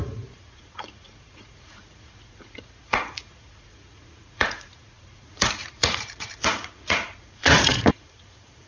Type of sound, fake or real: fake